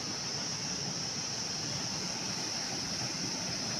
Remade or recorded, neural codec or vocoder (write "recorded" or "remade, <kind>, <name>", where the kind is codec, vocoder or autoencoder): recorded